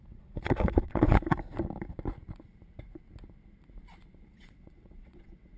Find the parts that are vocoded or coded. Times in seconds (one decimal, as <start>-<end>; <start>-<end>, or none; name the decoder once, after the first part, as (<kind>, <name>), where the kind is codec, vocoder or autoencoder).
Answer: 0.0-1.3 (vocoder, WaveNeXt); 4.3-5.6